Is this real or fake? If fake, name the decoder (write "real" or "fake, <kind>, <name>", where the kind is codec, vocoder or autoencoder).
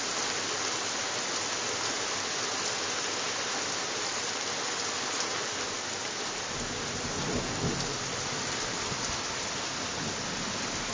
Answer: real